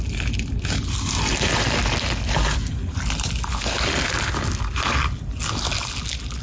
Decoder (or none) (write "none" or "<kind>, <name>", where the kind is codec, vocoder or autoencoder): none